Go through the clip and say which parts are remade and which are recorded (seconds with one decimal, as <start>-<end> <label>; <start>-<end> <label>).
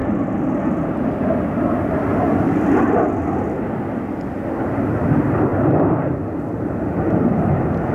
0.0-1.6 remade; 1.6-2.1 recorded; 2.1-3.0 remade; 3.0-5.5 recorded; 5.5-7.3 remade; 7.3-7.9 recorded